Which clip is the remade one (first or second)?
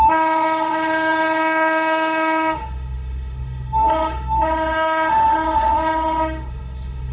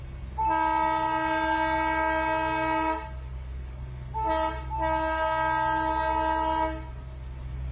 first